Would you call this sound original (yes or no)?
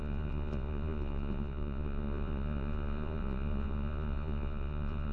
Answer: no